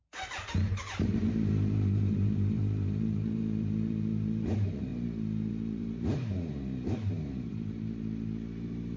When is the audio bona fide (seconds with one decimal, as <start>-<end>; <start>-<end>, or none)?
4.9-5.5